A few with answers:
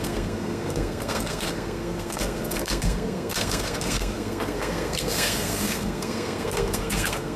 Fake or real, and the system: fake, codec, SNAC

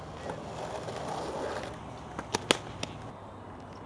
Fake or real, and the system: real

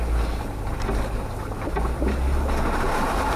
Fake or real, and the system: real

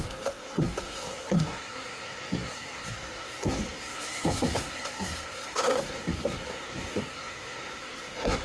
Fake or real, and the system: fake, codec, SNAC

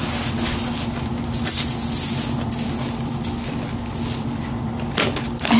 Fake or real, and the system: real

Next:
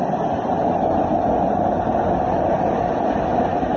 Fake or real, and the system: real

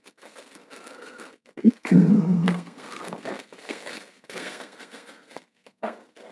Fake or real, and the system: fake, codec, SNAC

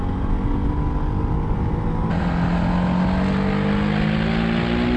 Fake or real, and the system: real